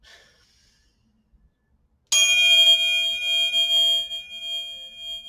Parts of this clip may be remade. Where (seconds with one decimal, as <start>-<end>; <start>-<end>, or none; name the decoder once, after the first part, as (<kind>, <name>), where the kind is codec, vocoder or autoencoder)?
none